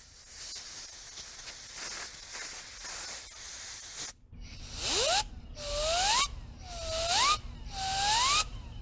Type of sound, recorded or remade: recorded